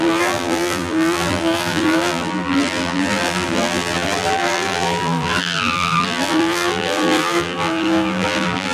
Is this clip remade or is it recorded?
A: remade